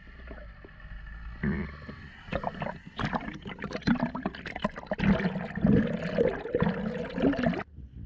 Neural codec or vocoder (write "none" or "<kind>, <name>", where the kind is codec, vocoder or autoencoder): none